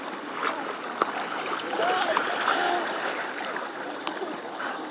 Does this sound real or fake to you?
fake